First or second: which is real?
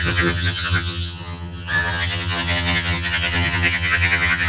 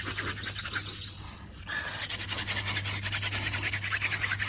second